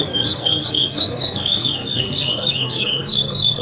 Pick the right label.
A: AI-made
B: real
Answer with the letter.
A